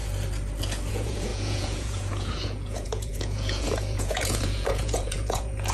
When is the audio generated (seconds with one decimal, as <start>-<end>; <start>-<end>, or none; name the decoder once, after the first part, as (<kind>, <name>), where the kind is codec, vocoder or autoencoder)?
0.9-5.7 (vocoder, Vocos)